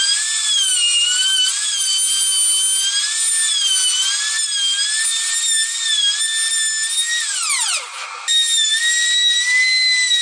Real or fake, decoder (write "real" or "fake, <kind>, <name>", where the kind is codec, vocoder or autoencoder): real